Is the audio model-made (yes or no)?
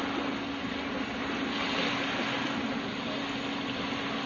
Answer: no